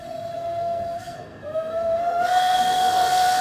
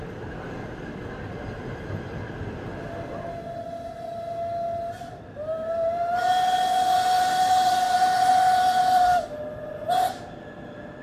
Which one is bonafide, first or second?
second